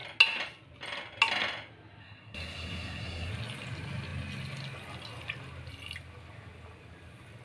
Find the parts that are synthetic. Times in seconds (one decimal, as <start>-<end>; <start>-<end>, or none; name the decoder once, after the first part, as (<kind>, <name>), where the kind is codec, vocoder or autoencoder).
2.0-3.3 (codec, SNAC)